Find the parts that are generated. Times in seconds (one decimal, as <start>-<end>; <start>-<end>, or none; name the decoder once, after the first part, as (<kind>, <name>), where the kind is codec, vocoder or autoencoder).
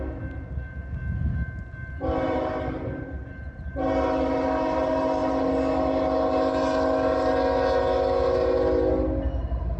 none